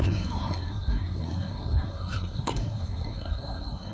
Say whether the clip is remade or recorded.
remade